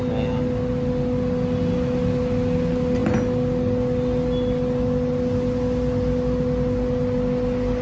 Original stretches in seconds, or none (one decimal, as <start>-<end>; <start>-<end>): 0.0-7.8